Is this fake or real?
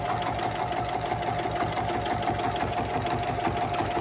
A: real